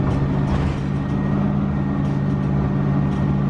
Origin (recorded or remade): recorded